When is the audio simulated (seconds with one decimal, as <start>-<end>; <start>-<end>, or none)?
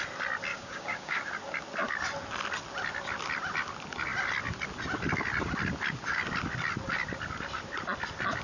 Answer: 0.5-1.2